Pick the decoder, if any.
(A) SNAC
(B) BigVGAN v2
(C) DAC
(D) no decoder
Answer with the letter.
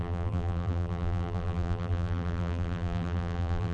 B